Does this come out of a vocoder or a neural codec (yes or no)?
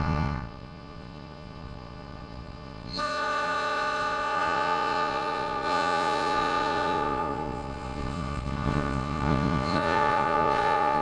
yes